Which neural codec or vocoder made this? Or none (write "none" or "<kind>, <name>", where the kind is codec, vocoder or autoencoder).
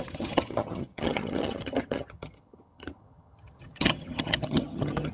vocoder, HiFi-GAN